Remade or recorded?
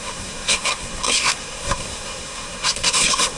remade